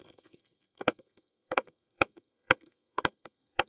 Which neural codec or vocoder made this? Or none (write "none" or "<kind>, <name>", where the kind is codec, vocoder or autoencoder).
codec, SNAC